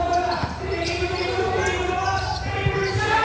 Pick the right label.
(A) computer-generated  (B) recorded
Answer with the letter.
B